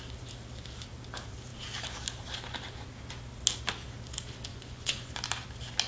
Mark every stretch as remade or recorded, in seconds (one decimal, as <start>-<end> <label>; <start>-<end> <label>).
0.0-4.5 recorded; 4.5-5.1 remade; 5.1-5.9 recorded